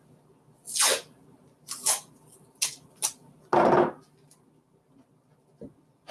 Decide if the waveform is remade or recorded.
recorded